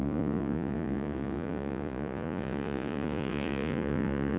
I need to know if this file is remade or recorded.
remade